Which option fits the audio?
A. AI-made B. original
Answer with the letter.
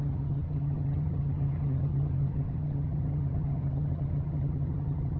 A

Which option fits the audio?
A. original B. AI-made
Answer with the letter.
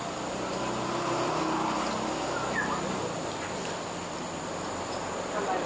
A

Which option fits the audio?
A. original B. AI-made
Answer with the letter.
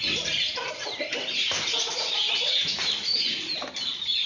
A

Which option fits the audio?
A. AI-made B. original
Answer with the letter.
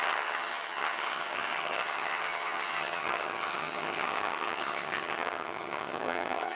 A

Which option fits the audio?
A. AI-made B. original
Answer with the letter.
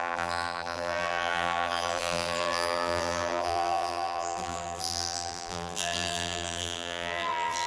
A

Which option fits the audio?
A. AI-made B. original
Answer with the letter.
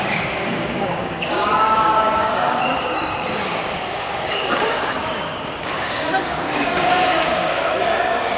A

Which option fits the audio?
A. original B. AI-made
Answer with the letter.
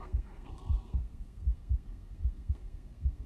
B